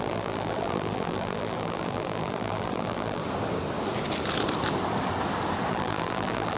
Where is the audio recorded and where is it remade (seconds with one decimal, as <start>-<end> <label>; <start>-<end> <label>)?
0.0-3.2 remade; 3.2-5.7 recorded; 5.7-6.6 remade